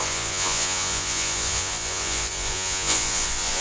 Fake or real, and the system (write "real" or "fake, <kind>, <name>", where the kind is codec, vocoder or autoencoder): fake, vocoder, Vocos